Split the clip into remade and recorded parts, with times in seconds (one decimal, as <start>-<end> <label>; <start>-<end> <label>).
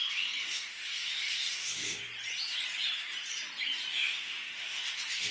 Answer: 0.0-0.4 recorded; 0.4-2.0 remade; 2.0-3.9 recorded; 3.9-5.3 remade